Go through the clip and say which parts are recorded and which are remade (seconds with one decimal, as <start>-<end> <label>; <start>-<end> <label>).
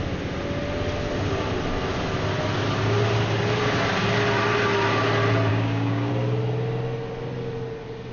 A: 0.0-5.5 recorded; 5.5-6.1 remade; 6.1-8.1 recorded